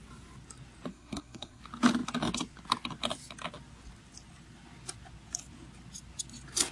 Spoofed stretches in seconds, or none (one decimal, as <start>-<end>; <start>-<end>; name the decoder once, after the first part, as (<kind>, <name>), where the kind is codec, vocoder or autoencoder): 0.9-1.6 (codec, SNAC)